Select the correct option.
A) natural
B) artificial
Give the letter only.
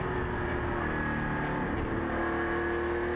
A